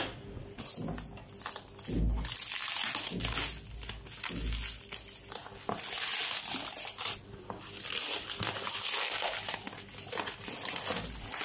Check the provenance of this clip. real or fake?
real